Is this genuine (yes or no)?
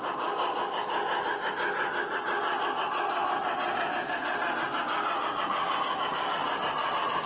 yes